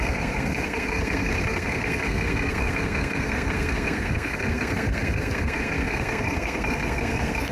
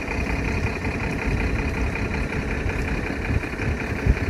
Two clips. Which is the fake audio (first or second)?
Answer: first